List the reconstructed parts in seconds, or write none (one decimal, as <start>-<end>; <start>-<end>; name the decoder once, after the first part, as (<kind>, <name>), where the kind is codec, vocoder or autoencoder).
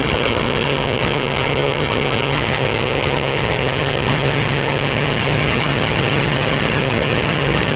0.0-7.8 (vocoder, HiFi-GAN)